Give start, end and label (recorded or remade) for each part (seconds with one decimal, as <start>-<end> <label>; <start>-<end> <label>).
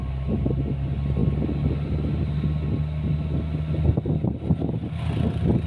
0.0-5.7 recorded